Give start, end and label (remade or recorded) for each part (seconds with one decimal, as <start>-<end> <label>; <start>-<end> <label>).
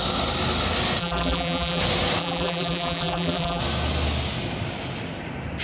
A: 0.0-1.0 recorded; 1.0-1.8 remade; 1.8-2.2 recorded; 2.2-3.6 remade; 3.6-5.6 recorded